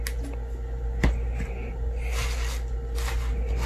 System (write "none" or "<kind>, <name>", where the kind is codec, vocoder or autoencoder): none